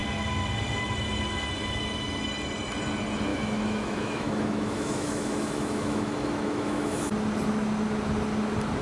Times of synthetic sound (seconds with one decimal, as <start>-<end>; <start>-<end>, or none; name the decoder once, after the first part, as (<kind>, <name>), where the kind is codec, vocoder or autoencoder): 3.3-7.1 (autoencoder, DAC-VAE)